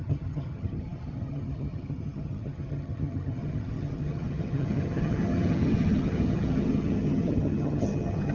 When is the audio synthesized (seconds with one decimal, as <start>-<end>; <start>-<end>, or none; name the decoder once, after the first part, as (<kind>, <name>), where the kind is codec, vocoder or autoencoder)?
0.0-8.3 (vocoder, HiFi-GAN)